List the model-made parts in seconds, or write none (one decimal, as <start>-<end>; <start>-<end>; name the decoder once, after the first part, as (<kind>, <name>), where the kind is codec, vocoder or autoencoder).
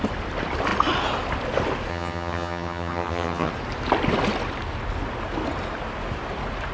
1.9-3.5 (vocoder, HiFi-GAN)